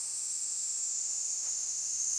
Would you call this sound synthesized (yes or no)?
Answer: yes